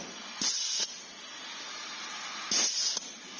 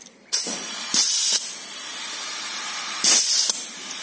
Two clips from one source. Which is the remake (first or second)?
second